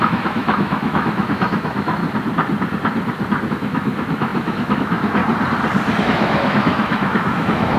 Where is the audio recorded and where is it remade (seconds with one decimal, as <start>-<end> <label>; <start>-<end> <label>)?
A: 0.0-2.0 remade; 2.0-3.5 recorded; 3.5-5.2 remade; 5.2-6.0 recorded; 6.0-7.8 remade